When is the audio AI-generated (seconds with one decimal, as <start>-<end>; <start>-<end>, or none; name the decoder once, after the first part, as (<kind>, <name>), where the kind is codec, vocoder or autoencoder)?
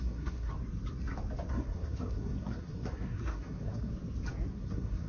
0.0-0.5 (codec, SNAC); 1.5-3.9; 4.5-5.1